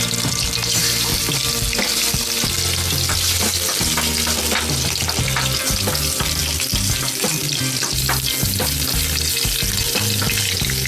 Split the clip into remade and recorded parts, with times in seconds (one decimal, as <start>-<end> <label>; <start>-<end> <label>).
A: 0.0-10.9 recorded